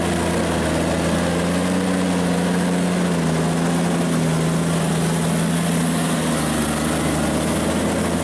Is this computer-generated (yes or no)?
no